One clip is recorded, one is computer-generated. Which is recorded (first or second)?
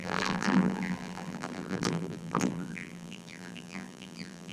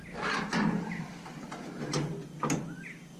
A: second